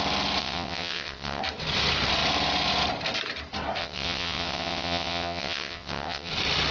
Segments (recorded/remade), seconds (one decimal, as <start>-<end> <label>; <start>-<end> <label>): 0.0-0.4 recorded; 0.4-1.4 remade; 1.4-3.8 recorded; 3.8-6.3 remade; 6.3-6.7 recorded